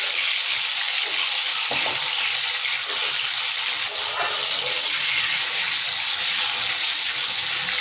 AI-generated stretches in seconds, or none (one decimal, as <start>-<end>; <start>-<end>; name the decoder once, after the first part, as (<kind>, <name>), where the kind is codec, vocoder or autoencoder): 1.5-2.6 (vocoder, BigVGAN v2)